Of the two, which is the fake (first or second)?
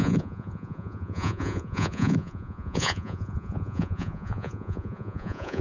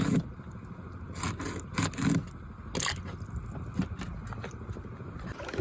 first